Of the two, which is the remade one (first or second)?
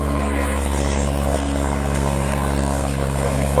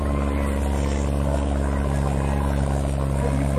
first